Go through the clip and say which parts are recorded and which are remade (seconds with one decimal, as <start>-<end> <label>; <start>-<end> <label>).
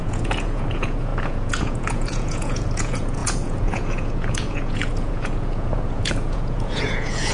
0.0-7.3 remade